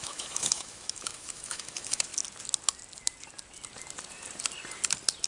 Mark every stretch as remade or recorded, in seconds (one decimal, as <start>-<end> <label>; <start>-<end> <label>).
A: 0.0-2.1 remade; 2.1-5.3 recorded